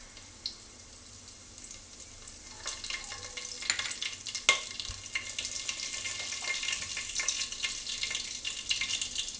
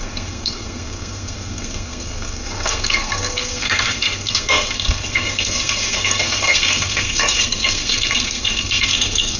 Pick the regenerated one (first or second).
second